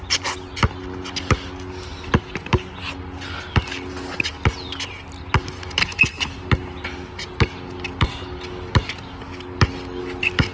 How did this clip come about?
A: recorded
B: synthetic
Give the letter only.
A